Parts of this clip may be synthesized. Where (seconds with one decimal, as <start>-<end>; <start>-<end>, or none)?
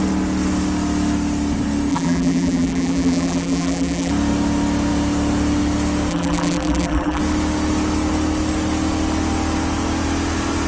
1.9-4.1; 6.1-7.2